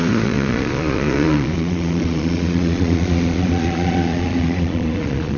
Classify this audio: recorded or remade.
remade